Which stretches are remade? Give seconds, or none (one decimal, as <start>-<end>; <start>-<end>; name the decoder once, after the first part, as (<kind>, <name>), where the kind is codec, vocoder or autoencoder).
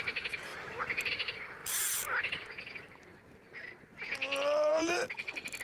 1.6-2.2 (vocoder, BigVGAN v2); 4.7-5.6